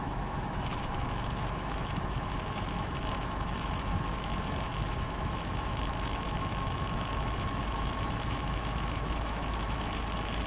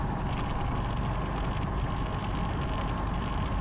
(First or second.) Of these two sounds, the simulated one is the first